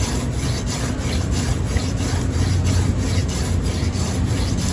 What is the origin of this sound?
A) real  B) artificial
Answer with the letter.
A